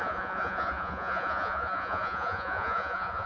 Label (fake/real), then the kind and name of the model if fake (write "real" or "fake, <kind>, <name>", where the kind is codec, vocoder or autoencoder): fake, vocoder, Vocos